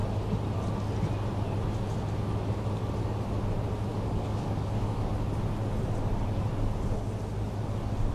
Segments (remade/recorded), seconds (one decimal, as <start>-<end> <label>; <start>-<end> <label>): 0.0-3.9 recorded; 3.9-5.1 remade; 5.1-8.1 recorded